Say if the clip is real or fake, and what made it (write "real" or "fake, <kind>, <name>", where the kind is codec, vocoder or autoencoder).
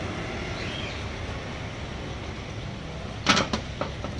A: real